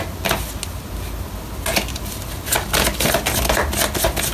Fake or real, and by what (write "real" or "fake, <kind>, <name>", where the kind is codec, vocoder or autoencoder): real